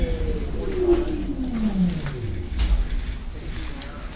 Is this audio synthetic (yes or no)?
no